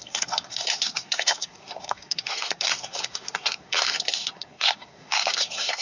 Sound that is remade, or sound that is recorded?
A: remade